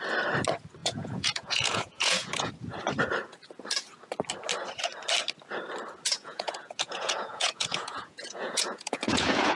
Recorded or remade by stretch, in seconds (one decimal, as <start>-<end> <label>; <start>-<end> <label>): 0.0-0.8 recorded; 0.8-2.5 remade; 2.5-6.1 recorded; 6.1-9.6 remade